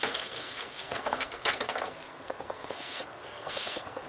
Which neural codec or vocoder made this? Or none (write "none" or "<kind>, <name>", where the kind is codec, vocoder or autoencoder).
codec, SNAC